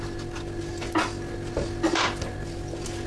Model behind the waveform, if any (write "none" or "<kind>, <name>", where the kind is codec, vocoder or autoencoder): none